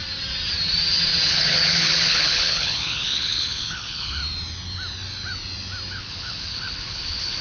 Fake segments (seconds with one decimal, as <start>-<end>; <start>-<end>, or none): 1.3-4.2; 5.9-7.4